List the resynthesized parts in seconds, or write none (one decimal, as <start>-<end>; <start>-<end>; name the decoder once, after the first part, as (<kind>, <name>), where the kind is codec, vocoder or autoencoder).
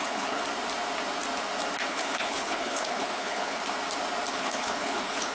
0.0-0.4 (codec, HILCodec); 1.9-3.6; 4.3-5.3